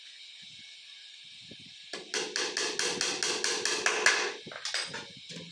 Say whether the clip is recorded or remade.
recorded